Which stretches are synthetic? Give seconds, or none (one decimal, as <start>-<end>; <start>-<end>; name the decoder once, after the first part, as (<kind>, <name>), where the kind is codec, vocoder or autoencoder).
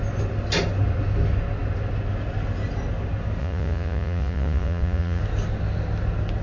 3.4-5.2 (vocoder, Vocos)